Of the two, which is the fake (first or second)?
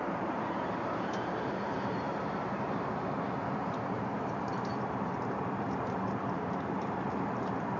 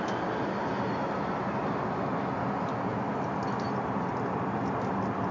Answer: first